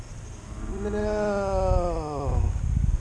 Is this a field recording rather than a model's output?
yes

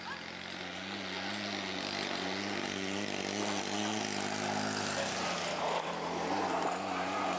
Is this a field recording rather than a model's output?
yes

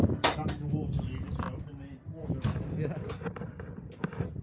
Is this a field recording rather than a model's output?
yes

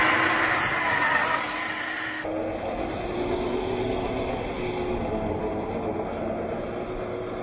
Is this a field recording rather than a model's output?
yes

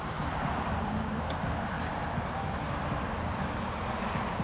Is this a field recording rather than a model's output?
yes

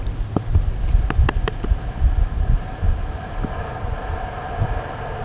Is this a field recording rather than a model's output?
yes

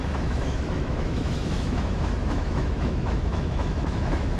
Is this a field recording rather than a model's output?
no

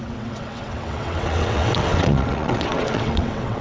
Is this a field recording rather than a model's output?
no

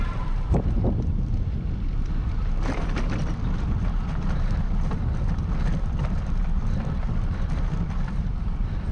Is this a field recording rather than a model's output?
no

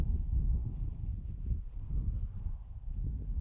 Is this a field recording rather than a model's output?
yes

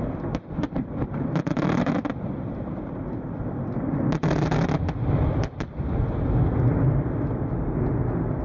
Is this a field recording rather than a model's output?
yes